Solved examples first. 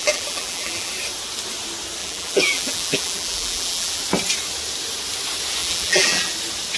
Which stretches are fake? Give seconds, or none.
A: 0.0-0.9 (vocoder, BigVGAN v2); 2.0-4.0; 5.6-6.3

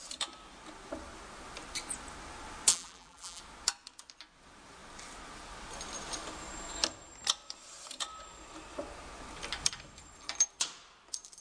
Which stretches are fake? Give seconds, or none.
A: 2.7-3.4 (vocoder, BigVGAN v2)

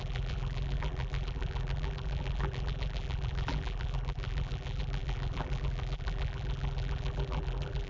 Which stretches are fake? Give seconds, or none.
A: 0.0-7.9 (vocoder, BigVGAN v2)

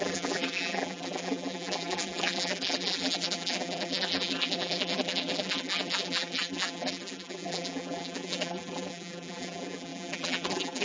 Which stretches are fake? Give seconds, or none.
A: 0.0-10.8 (vocoder, BigVGAN v2)